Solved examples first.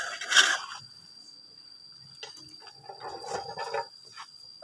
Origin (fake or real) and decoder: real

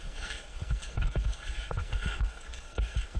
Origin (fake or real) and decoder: fake, codec, SNAC